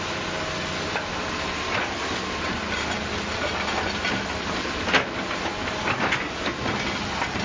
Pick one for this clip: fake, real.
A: real